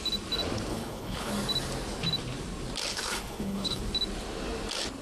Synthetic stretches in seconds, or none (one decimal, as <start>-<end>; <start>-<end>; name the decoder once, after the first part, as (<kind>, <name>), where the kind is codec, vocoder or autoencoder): 0.7-1.3 (codec, HILCodec); 2.9-3.8